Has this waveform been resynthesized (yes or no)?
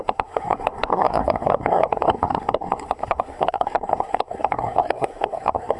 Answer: yes